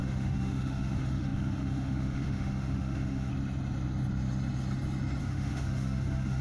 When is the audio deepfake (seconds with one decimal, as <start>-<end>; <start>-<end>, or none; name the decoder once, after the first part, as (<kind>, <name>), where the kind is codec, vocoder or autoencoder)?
0.0-3.3 (autoencoder, DAC-VAE); 5.2-6.4